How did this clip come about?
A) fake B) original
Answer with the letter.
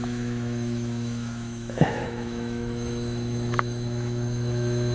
A